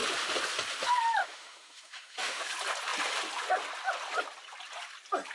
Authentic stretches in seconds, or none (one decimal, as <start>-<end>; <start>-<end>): 0.0-1.2; 2.4-5.3